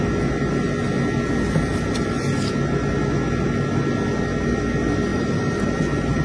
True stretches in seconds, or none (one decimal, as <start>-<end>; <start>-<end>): 0.0-1.7; 2.5-5.1